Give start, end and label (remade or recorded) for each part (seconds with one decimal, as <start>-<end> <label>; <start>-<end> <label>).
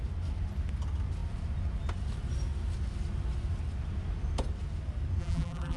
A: 0.0-5.2 recorded; 5.2-5.8 remade